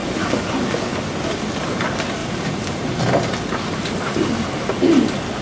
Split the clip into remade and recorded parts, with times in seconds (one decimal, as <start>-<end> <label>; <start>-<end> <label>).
0.0-2.2 recorded; 2.2-3.0 remade; 3.0-5.4 recorded